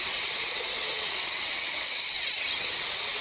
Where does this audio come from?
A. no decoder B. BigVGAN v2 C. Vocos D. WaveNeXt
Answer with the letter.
D